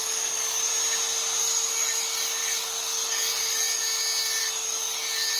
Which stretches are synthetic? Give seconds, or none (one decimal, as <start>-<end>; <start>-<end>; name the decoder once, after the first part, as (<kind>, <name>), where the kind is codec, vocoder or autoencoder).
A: 0.0-0.7 (codec, DAC); 1.4-3.8; 4.4-5.4